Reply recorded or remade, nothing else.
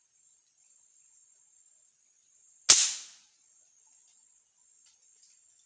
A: recorded